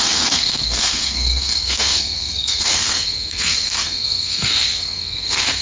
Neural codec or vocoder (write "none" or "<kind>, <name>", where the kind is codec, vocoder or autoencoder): codec, SNAC